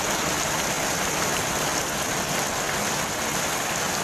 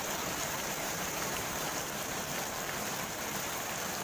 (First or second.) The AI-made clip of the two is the second